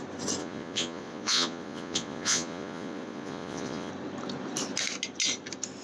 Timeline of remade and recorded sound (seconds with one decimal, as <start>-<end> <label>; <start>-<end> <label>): 0.0-0.4 recorded; 0.4-3.9 remade; 3.9-5.8 recorded